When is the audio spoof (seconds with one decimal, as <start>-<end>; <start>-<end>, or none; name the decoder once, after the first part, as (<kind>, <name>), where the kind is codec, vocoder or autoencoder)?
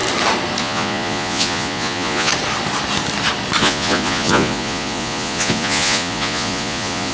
0.6-2.3 (vocoder, Vocos); 3.6-7.1